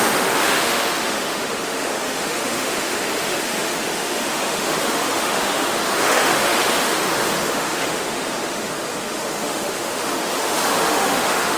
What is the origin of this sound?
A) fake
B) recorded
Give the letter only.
A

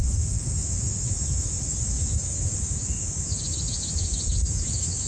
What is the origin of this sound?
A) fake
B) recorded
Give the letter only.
A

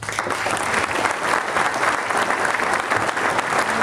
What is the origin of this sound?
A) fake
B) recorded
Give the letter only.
B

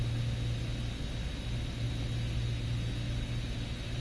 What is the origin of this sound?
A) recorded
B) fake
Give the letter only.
A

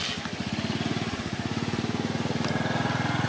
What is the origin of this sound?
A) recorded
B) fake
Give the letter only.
A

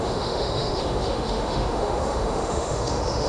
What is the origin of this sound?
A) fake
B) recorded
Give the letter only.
A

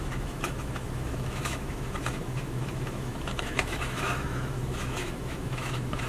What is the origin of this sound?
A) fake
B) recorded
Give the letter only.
A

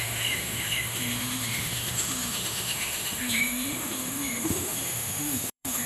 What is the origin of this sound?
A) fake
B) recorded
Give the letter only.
A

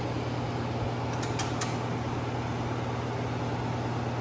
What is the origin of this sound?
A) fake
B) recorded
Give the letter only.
B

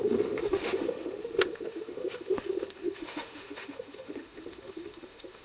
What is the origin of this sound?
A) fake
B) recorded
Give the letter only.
A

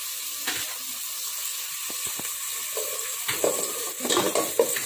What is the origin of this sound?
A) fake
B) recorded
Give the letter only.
B